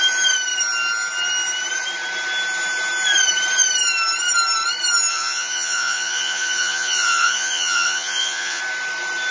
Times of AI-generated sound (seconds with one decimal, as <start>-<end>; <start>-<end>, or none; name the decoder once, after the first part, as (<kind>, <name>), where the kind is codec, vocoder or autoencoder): 5.1-8.6 (vocoder, Vocos)